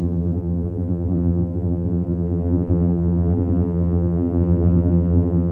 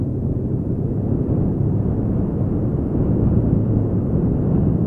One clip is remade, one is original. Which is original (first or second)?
second